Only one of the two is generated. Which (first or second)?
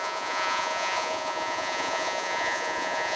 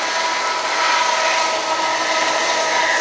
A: first